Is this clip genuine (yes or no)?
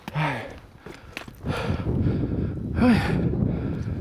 yes